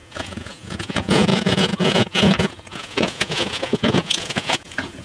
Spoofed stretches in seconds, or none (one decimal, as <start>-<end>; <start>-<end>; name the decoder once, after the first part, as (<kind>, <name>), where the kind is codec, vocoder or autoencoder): 0.0-5.0 (vocoder, Vocos)